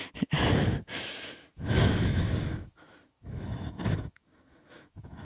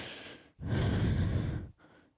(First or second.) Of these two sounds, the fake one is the first